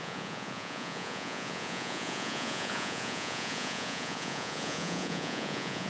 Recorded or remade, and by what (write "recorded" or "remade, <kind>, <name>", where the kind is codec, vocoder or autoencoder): remade, vocoder, Vocos